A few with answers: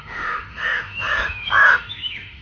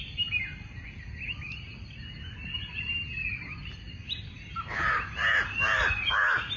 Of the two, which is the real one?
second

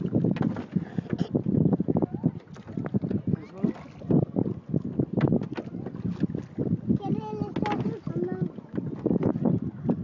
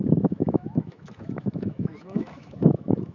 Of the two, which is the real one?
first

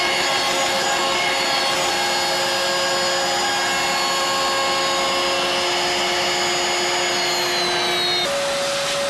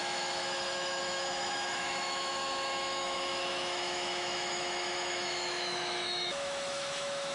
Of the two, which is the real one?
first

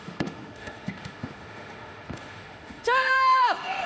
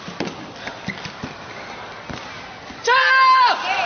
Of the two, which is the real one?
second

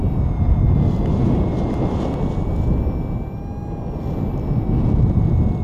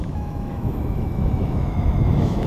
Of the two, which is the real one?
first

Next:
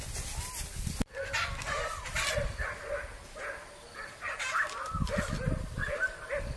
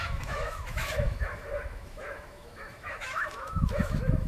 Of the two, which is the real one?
first